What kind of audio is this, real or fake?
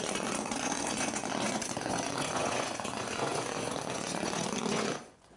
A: fake